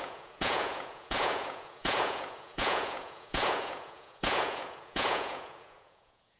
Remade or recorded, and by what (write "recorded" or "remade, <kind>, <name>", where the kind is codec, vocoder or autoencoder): remade, vocoder, Vocos